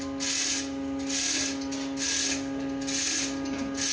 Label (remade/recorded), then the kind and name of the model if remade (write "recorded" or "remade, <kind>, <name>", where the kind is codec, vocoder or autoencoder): recorded